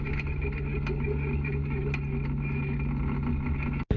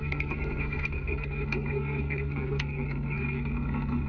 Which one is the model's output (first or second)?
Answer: second